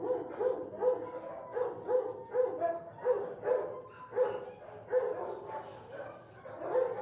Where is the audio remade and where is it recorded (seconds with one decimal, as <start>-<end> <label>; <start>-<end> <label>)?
0.0-7.0 recorded